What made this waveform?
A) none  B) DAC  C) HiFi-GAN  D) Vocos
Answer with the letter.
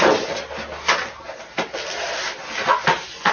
A